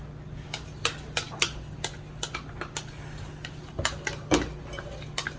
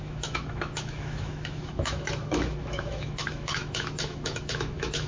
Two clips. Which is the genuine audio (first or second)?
first